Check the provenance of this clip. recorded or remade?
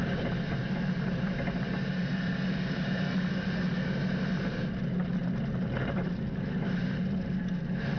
recorded